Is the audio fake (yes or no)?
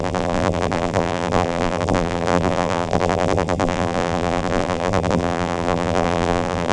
yes